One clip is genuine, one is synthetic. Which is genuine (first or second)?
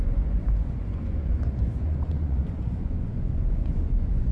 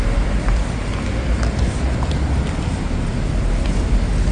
second